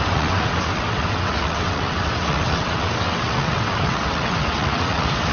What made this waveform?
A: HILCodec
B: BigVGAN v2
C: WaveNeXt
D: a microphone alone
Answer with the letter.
C